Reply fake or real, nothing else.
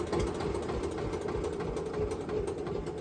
real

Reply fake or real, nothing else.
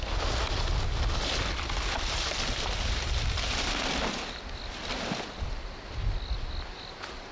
real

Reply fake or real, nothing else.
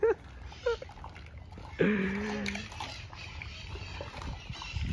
real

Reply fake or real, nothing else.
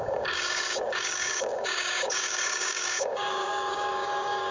fake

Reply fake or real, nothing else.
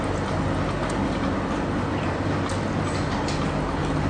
real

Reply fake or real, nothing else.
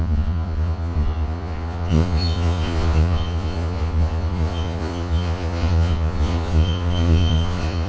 fake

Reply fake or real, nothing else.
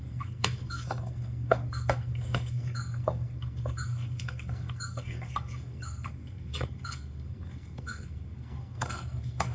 fake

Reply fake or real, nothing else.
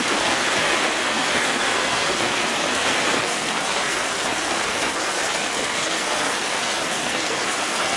fake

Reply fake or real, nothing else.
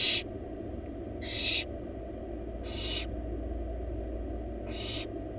real